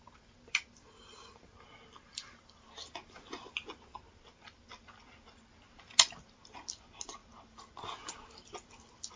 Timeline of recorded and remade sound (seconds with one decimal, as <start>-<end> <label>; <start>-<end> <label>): 0.0-9.2 recorded

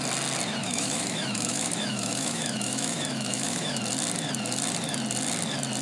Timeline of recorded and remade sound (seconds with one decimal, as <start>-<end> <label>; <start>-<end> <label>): 0.0-0.6 recorded; 0.6-3.8 remade; 3.8-5.8 recorded

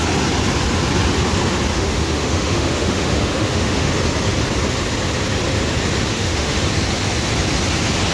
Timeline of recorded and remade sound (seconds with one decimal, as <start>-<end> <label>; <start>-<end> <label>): 0.0-1.7 recorded; 1.7-3.9 remade; 3.9-6.1 recorded; 6.1-6.6 remade; 6.6-8.1 recorded

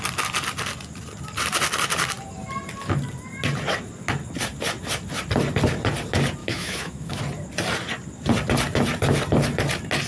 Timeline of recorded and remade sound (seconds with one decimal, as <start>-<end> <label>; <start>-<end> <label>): 0.0-6.4 recorded; 6.4-7.2 remade; 7.2-10.1 recorded

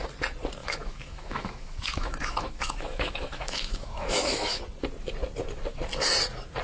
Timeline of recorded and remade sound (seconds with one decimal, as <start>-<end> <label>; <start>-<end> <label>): 0.0-0.6 recorded; 0.6-4.6 remade; 4.6-6.6 recorded

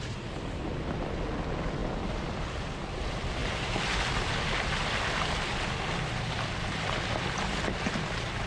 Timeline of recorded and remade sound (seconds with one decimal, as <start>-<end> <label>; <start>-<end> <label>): 0.0-8.5 recorded